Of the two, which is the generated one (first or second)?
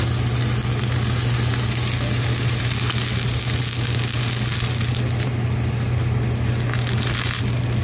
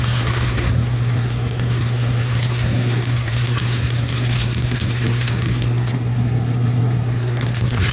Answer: second